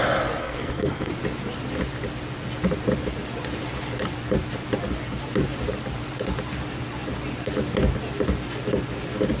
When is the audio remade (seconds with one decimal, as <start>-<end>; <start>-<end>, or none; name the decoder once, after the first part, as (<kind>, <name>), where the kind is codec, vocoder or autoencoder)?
0.4-1.1 (codec, SNAC)